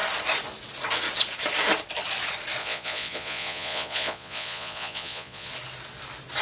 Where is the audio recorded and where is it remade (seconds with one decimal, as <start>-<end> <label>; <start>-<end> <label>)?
0.0-2.6 recorded; 2.6-5.5 remade; 5.5-6.4 recorded